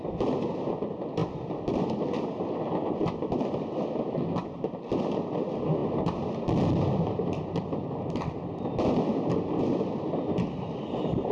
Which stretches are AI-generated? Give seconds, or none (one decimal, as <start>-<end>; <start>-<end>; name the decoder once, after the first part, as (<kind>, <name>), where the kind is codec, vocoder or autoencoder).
none